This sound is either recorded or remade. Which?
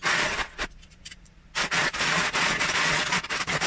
remade